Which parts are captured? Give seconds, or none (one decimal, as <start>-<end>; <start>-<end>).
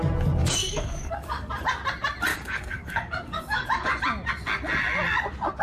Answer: 0.0-0.4; 1.5-2.3; 4.0-5.6